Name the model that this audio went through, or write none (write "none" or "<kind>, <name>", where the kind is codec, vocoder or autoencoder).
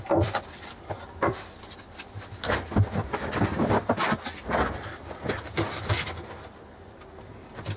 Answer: vocoder, BigVGAN v2